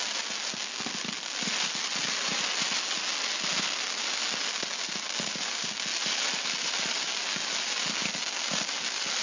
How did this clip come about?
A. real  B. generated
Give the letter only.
A